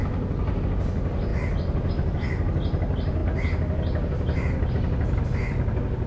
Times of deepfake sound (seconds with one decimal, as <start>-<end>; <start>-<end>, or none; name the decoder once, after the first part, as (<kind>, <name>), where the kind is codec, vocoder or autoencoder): none